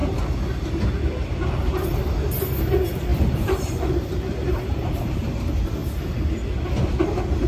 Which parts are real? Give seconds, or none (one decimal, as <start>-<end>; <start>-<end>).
0.0-2.6; 5.8-7.5